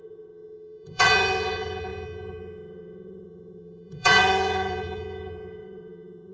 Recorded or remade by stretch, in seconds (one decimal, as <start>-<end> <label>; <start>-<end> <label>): 0.0-6.3 remade